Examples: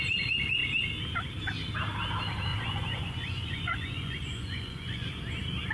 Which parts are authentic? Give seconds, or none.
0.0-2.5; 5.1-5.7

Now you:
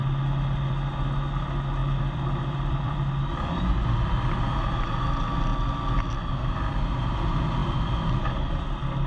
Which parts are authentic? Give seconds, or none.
0.0-1.8; 3.6-9.1

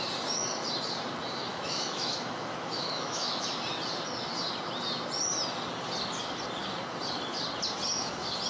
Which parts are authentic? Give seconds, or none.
0.0-1.5; 3.5-8.5